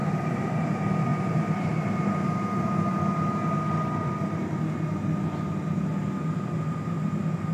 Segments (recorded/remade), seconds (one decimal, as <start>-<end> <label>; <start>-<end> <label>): 0.0-0.6 remade; 0.6-1.1 recorded; 1.1-3.0 remade; 3.0-7.5 recorded